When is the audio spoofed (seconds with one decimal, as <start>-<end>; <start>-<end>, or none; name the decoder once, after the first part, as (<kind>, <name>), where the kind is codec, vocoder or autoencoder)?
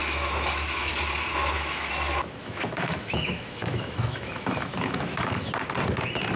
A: 0.0-0.9 (autoencoder, DAC-VAE); 1.3-1.9; 2.4-5.5